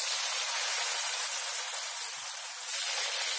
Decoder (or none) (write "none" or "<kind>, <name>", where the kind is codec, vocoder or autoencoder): none